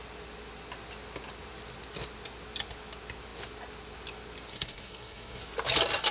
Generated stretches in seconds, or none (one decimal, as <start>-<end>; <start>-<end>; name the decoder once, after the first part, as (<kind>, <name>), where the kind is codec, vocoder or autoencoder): 4.5-5.4 (codec, SNAC)